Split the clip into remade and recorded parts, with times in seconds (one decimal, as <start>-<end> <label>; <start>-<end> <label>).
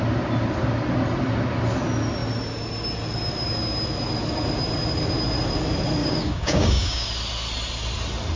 0.0-6.0 recorded; 6.0-7.1 remade; 7.1-8.4 recorded